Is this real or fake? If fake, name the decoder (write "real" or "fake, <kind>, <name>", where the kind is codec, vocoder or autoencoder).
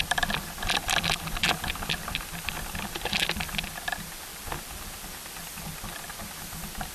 fake, vocoder, BigVGAN v2